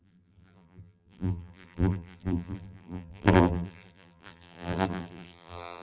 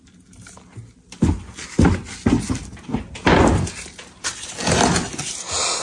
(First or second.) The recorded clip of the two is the second